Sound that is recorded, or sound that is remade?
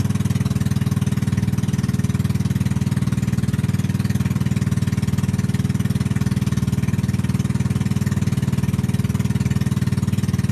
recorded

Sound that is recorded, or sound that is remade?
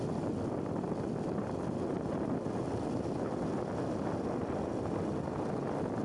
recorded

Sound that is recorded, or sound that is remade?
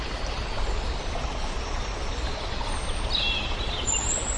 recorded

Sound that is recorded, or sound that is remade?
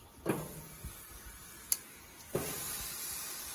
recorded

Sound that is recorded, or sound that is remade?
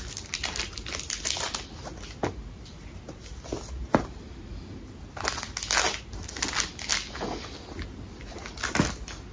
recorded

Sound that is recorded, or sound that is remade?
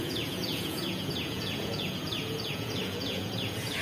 remade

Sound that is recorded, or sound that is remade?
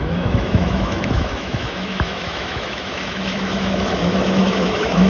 remade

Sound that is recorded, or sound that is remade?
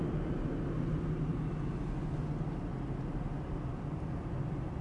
recorded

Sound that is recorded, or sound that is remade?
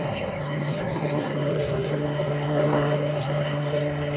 remade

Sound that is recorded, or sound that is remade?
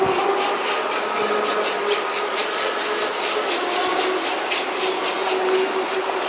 recorded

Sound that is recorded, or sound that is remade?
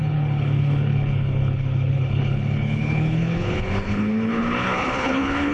remade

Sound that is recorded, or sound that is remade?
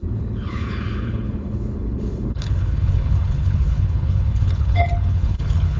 remade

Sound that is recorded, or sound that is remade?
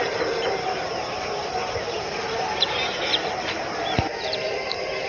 remade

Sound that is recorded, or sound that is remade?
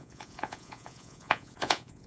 remade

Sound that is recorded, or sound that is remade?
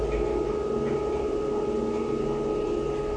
recorded